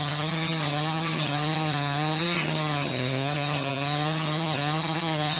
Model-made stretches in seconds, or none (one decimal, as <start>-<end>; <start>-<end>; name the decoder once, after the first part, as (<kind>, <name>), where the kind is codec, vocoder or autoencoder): 0.0-5.4 (vocoder, HiFi-GAN)